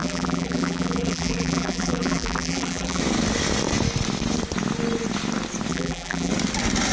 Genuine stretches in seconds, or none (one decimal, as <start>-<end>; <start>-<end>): 3.0-5.7; 6.3-6.9